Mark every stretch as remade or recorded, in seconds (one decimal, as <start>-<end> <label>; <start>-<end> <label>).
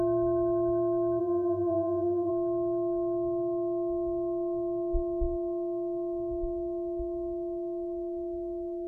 0.0-1.2 recorded; 1.2-2.3 remade; 2.3-8.9 recorded